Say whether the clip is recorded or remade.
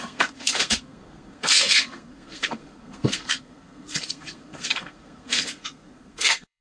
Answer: remade